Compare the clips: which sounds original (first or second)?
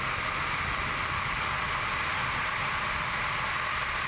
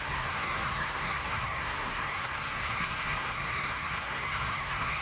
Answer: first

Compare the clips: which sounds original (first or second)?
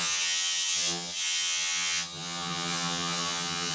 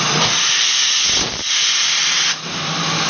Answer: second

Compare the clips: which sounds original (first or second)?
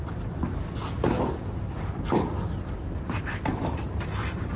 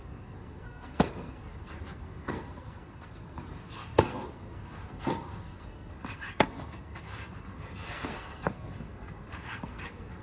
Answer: first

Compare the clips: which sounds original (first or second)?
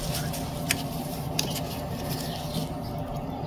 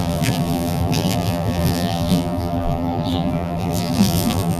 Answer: first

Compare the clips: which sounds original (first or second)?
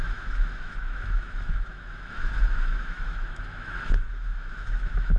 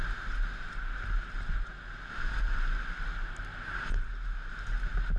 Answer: second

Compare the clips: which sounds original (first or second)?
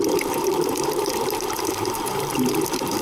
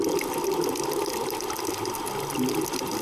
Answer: second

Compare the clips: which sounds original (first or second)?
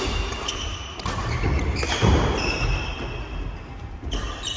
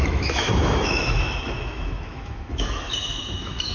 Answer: first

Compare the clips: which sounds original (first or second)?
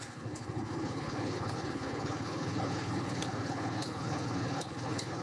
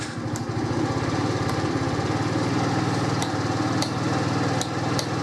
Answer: second